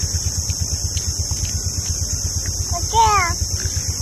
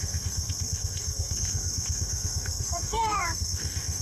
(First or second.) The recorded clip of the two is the first